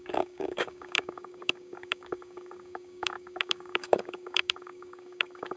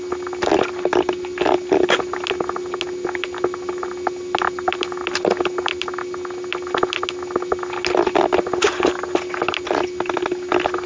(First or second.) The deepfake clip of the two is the first